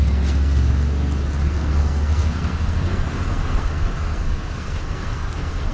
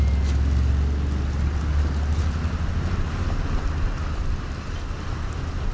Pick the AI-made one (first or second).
first